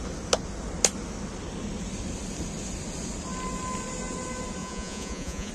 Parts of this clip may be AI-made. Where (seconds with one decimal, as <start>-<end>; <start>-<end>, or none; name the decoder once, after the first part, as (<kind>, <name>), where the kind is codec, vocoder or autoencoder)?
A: 4.6-5.5 (vocoder, Vocos)